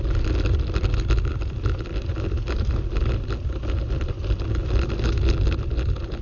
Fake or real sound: real